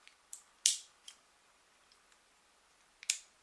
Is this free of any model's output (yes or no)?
yes